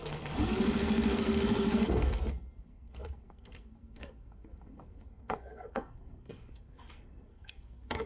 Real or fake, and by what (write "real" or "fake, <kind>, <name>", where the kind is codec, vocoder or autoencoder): fake, codec, SNAC